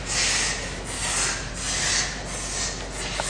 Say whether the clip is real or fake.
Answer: real